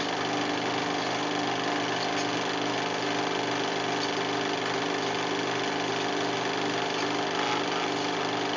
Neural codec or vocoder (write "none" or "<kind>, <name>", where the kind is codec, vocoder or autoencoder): none